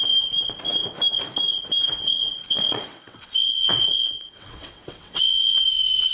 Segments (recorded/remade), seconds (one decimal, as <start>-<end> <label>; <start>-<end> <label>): 0.0-2.0 recorded; 2.0-5.6 remade; 5.6-6.1 recorded